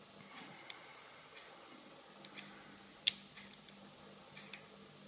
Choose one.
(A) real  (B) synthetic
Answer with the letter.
A